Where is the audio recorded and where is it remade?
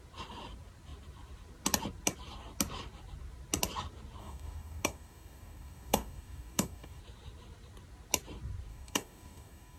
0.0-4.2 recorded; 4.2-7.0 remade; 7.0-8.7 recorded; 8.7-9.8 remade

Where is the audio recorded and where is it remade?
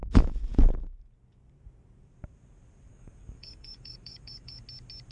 0.0-2.9 recorded; 2.9-4.6 remade; 4.6-5.1 recorded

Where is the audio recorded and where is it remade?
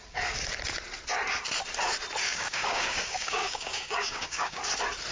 0.0-2.2 recorded; 2.2-4.6 remade; 4.6-5.1 recorded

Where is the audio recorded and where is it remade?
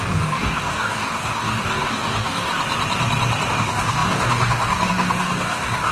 0.0-2.5 remade; 2.5-3.5 recorded; 3.5-5.9 remade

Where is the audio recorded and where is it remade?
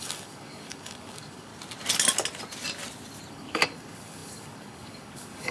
0.0-1.5 remade; 1.5-3.3 recorded; 3.3-5.5 remade